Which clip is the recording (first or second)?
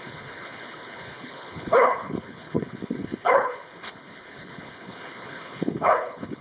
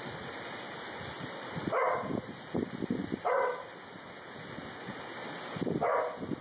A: second